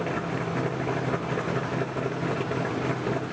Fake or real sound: real